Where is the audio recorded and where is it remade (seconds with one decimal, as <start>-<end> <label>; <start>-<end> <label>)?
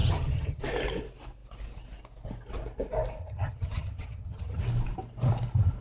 0.0-0.6 remade; 0.6-3.2 recorded; 3.2-4.6 remade; 4.6-5.8 recorded